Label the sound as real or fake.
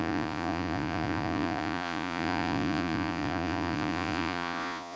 fake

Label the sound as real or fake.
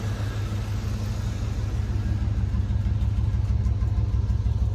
real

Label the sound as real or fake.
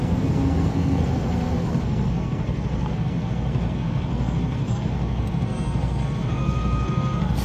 fake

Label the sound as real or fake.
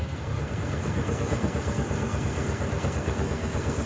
fake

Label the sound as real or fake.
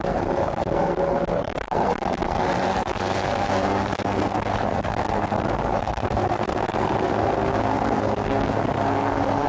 fake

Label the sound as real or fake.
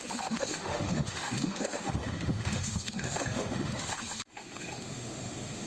fake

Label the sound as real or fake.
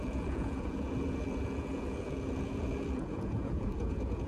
fake